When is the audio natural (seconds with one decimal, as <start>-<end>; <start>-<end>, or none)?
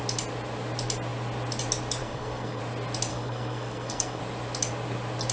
0.0-2.0; 2.6-3.1; 4.2-5.3